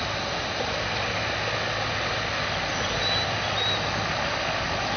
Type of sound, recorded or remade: recorded